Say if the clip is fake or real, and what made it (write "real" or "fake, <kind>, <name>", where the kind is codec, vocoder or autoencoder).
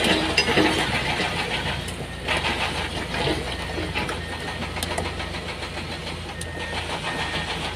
real